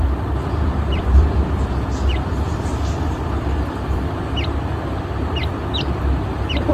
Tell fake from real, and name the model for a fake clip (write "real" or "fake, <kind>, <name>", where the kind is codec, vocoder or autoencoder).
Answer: fake, vocoder, BigVGAN v2